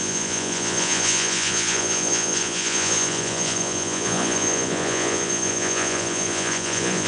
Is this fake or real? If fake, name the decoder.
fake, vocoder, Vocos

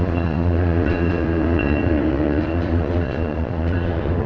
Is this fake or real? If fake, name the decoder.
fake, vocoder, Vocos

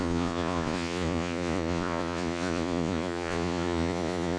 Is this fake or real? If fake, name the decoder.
fake, vocoder, Vocos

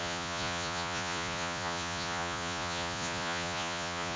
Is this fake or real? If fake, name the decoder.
fake, vocoder, Vocos